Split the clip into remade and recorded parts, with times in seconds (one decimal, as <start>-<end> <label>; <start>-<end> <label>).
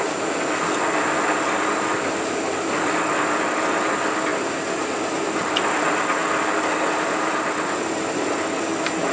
0.0-9.1 recorded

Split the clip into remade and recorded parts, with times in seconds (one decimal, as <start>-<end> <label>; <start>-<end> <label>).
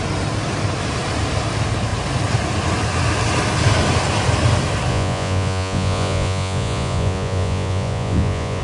0.0-4.9 recorded; 4.9-8.6 remade